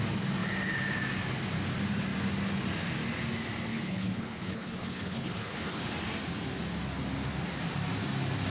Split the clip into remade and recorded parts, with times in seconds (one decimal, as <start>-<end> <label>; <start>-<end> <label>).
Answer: 0.0-3.7 recorded; 3.7-5.9 remade; 5.9-8.5 recorded